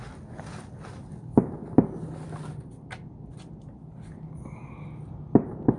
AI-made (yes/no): no